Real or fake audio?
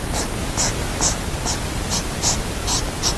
real